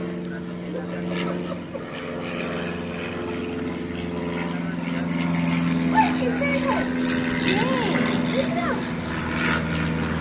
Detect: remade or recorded recorded